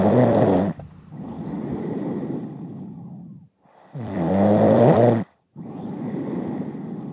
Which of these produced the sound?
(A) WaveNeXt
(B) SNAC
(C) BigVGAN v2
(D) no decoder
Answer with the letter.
C